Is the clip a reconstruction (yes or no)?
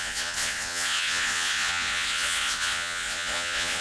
yes